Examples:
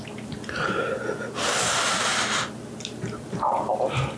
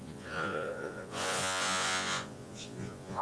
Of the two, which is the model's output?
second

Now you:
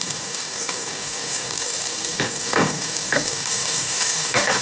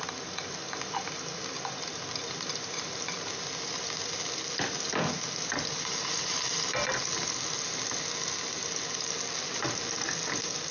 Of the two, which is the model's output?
first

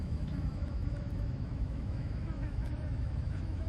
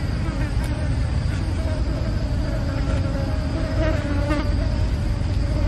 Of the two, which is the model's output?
first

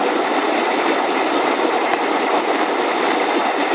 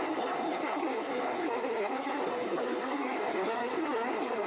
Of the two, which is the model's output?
second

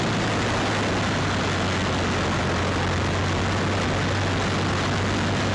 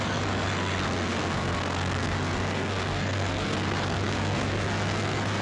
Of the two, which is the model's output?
second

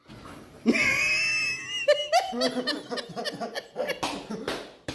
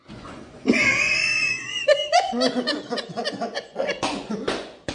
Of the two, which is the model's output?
second